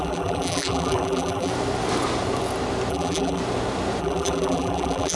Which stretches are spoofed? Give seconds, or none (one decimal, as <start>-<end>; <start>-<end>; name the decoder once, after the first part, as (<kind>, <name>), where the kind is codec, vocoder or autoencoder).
0.0-1.5 (vocoder, BigVGAN v2); 2.9-3.4; 4.0-5.1